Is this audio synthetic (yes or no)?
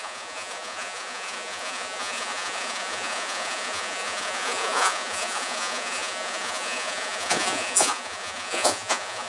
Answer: yes